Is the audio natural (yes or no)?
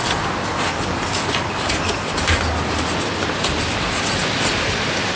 yes